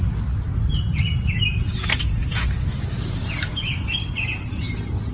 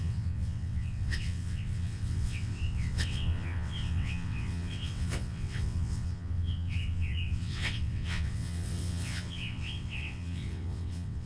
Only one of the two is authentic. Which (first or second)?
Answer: first